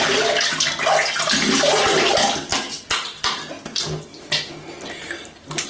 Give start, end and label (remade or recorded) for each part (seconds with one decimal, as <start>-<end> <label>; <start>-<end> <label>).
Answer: 0.0-5.7 recorded